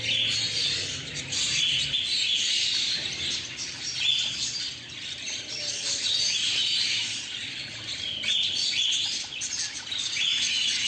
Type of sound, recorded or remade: recorded